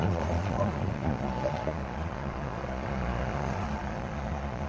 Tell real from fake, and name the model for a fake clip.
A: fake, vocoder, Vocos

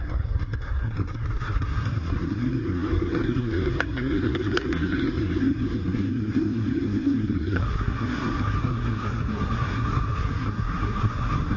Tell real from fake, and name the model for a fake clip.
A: fake, codec, SNAC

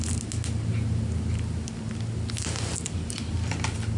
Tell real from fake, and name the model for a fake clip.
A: real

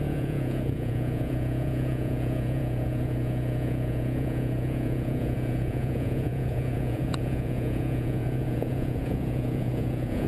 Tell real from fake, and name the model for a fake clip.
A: fake, vocoder, Vocos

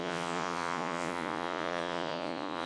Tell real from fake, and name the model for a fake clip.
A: fake, vocoder, Vocos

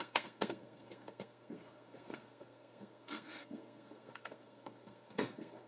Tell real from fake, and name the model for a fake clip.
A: fake, codec, SNAC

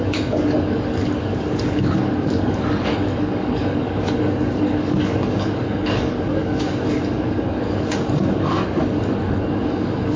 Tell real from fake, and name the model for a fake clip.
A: fake, codec, DAC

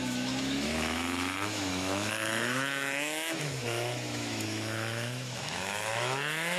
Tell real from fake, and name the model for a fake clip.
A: fake, autoencoder, DAC-VAE